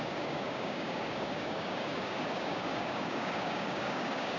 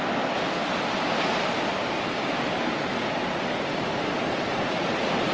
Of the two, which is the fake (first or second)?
first